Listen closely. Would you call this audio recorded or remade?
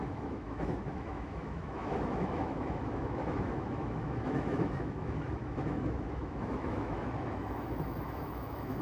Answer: remade